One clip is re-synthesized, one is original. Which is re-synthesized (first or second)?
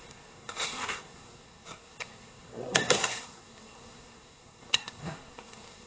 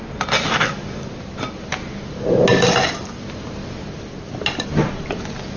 first